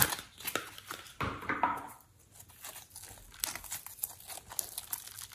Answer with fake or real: real